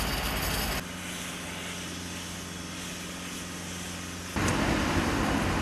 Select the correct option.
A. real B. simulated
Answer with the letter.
A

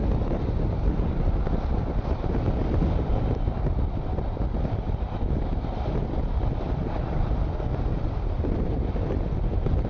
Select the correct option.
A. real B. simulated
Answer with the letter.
B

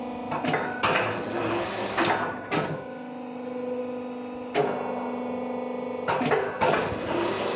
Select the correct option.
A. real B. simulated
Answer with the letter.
A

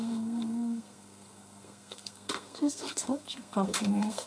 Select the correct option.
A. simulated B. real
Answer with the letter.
A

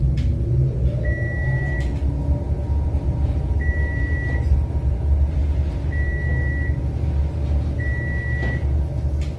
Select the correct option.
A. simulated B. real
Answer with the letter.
B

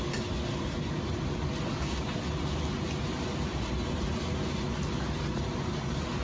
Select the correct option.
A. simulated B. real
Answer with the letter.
B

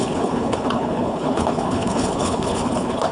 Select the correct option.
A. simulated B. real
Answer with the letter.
A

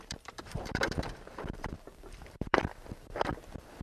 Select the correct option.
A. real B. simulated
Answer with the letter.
B